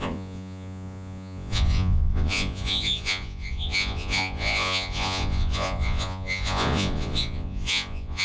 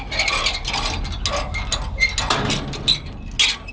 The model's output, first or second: first